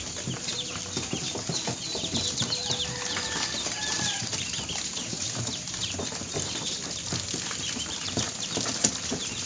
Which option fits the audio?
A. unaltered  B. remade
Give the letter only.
A